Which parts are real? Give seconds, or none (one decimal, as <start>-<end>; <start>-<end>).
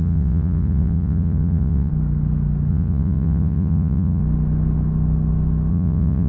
1.9-2.7; 4.2-5.7